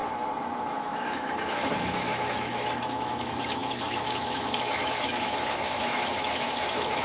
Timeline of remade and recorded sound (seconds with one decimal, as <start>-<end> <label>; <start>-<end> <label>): 0.0-0.6 recorded; 0.6-7.0 remade